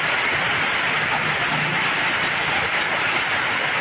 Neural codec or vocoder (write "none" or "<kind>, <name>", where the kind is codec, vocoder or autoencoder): none